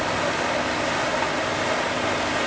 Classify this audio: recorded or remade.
recorded